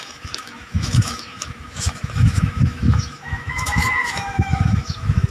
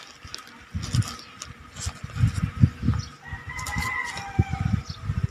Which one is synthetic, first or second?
first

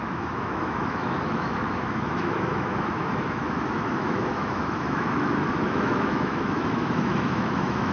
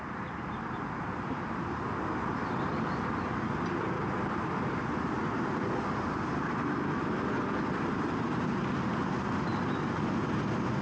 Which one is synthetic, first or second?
first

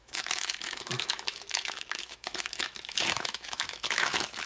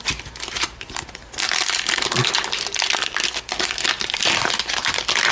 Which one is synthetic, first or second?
first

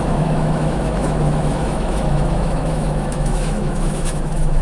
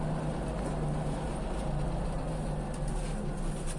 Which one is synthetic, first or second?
first